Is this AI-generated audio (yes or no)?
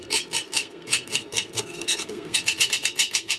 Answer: yes